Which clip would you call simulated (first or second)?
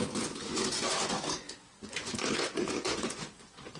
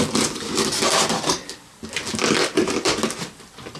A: first